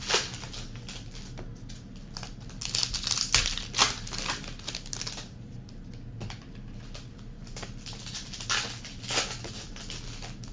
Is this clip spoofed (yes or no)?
no